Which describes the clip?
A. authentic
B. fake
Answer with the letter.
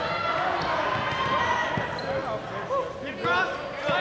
A